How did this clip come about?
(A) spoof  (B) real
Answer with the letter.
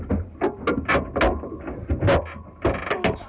B